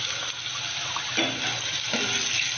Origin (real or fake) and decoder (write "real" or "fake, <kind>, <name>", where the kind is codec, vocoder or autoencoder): real